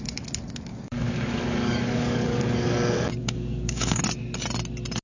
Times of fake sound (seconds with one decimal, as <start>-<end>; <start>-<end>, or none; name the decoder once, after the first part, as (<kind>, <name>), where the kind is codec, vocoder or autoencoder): 0.7-2.4 (codec, DAC); 3.2-4.0